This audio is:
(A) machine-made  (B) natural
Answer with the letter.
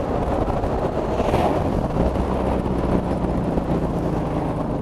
B